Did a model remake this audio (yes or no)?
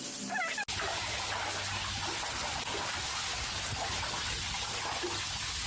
no